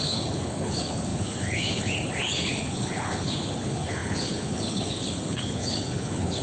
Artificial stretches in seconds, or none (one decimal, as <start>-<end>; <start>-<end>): 0.0-6.4